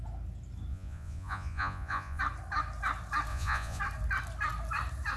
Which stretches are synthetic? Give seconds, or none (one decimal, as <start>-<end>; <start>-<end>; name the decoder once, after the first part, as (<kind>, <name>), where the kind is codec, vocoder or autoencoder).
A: 0.7-2.2 (vocoder, Vocos); 3.3-3.8